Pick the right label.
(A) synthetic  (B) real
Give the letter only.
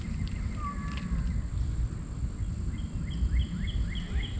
B